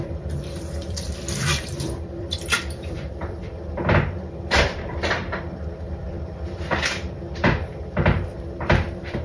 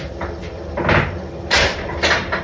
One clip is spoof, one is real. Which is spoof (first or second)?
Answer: first